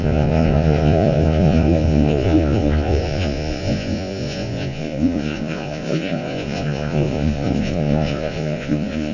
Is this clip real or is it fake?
fake